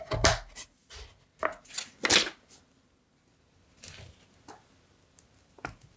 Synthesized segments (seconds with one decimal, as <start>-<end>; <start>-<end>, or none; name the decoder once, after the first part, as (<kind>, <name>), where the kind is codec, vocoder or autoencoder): none